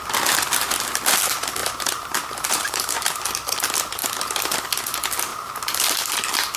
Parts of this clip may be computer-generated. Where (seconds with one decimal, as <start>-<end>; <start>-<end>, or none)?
1.6-3.2